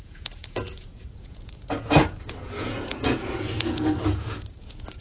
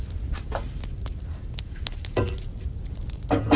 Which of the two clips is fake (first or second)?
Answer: first